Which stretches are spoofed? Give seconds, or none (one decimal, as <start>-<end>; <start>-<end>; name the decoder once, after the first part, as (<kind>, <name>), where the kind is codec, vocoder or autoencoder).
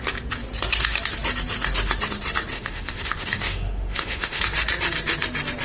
2.5-4.4 (autoencoder, DAC-VAE)